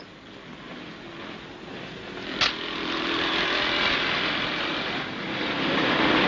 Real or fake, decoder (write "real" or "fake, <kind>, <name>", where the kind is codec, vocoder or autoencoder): real